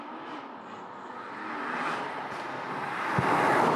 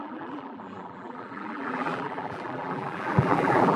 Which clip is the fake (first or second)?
second